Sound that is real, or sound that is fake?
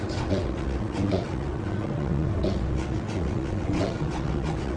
fake